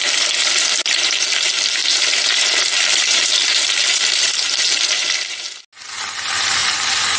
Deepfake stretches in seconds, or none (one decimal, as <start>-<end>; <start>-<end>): 1.8-5.4